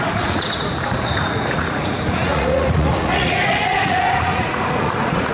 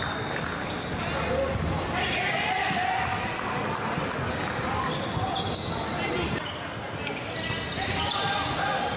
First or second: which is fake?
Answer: first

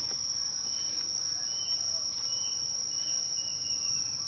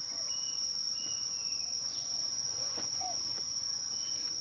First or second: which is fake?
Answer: second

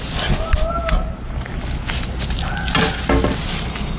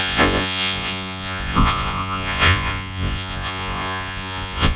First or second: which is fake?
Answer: second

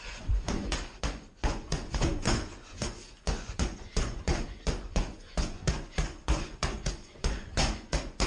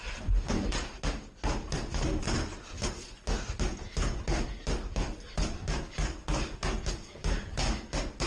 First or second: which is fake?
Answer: first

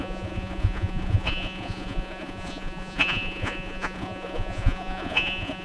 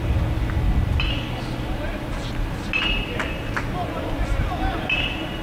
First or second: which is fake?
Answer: first